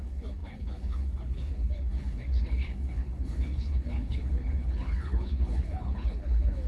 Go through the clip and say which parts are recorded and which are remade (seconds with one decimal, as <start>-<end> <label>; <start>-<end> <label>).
0.0-6.7 remade